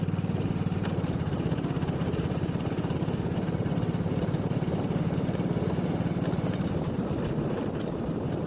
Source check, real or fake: fake